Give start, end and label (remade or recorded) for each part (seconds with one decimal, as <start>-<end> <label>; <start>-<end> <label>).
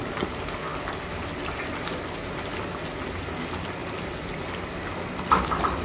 0.0-5.8 recorded